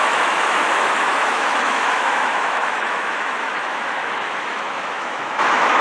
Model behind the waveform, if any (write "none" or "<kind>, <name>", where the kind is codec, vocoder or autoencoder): autoencoder, DAC-VAE